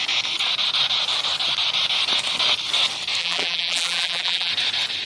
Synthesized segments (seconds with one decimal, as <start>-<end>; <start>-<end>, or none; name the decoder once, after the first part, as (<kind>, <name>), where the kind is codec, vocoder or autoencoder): 3.2-4.5 (vocoder, BigVGAN v2)